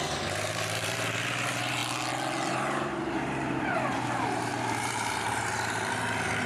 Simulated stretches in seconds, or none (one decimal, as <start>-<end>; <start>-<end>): 0.0-1.8; 2.5-6.5

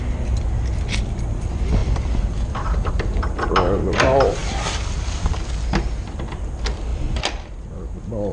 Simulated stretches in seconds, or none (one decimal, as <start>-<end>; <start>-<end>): 1.8-2.9; 4.4-5.4; 6.9-7.5